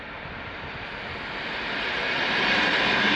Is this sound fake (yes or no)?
no